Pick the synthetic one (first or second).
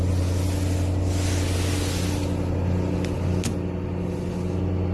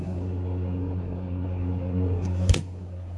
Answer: second